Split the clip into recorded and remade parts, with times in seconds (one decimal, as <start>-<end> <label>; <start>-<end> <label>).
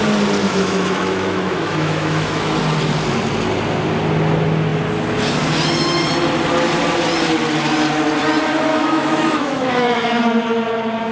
0.0-0.4 recorded; 0.4-2.6 remade; 2.6-8.7 recorded; 8.7-10.2 remade; 10.2-11.1 recorded